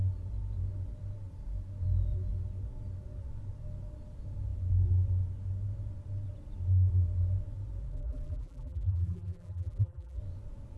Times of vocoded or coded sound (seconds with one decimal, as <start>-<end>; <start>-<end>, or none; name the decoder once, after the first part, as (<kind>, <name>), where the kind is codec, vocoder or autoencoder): 7.9-10.2 (vocoder, BigVGAN v2)